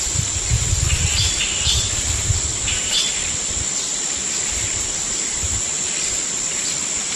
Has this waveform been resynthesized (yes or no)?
yes